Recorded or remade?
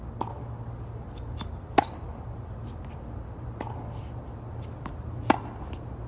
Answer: recorded